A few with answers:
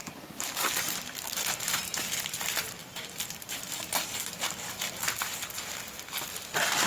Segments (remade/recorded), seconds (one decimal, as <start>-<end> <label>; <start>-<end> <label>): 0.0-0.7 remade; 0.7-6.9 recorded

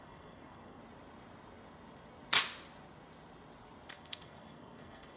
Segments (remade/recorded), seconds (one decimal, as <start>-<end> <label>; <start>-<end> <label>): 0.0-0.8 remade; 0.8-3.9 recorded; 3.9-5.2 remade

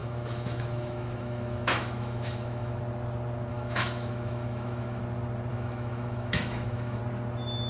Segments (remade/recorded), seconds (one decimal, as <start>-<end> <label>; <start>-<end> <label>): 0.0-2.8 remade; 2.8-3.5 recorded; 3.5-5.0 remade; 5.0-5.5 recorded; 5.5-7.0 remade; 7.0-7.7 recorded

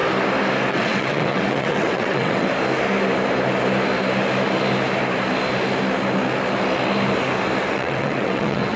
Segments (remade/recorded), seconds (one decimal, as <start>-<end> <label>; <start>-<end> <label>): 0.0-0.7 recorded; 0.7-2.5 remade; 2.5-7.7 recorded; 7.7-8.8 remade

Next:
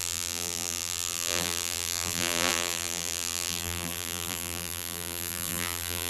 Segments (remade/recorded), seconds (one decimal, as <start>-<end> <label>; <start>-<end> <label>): 0.0-6.1 remade

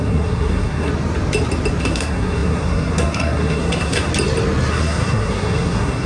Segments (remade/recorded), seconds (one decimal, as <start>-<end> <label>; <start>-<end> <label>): 0.0-0.9 remade; 0.9-1.8 recorded; 1.8-4.1 remade; 4.1-4.7 recorded; 4.7-6.1 remade